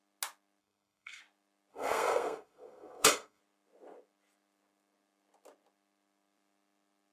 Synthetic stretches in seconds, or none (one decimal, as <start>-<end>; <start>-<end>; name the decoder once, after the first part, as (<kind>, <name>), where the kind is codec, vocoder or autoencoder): 0.6-1.2 (codec, SNAC); 1.7-3.4